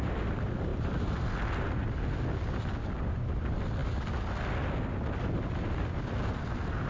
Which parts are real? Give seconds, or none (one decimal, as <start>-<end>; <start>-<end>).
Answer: 0.0-6.9